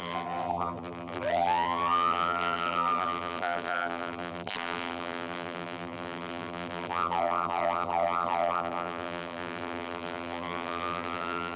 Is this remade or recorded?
remade